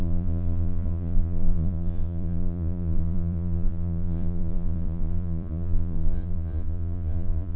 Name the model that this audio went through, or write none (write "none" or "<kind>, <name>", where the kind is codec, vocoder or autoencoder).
vocoder, Vocos